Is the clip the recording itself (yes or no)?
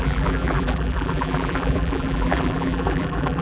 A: no